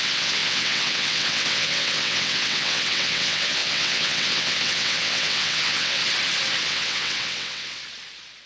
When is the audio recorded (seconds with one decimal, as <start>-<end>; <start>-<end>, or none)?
6.0-6.6; 7.8-8.5